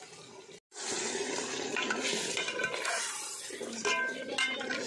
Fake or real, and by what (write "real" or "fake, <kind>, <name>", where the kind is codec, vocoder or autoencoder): real